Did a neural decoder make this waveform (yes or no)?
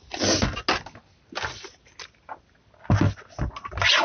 no